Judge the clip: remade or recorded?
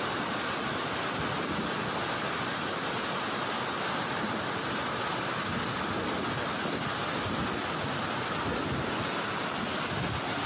recorded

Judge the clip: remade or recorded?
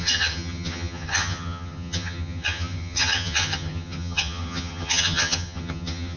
remade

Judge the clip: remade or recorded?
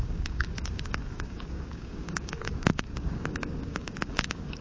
remade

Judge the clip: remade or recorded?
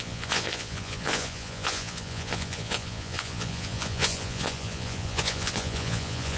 remade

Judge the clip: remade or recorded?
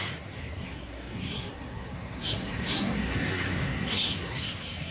remade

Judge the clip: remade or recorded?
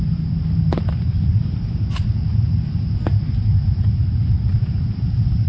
remade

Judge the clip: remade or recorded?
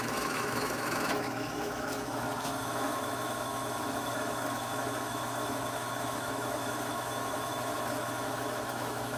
remade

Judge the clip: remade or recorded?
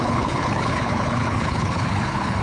remade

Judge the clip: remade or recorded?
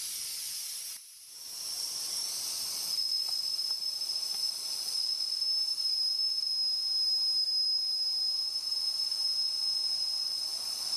recorded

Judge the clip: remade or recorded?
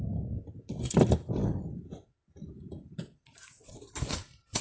recorded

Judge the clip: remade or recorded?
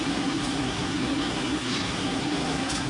remade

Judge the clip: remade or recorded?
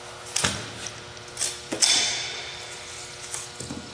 recorded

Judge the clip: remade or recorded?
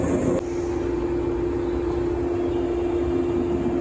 recorded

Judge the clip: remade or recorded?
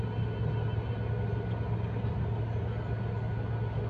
recorded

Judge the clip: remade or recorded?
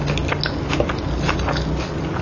recorded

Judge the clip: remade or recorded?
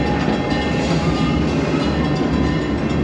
recorded